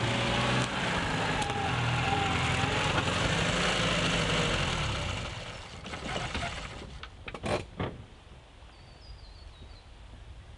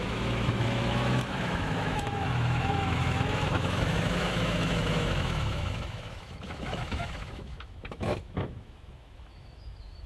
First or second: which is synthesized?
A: second